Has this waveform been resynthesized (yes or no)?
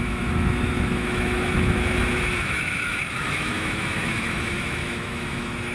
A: yes